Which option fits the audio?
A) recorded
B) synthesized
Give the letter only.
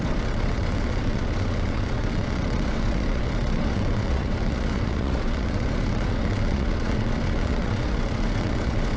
B